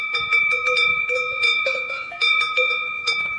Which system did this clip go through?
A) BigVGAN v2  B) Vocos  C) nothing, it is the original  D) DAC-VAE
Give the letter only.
B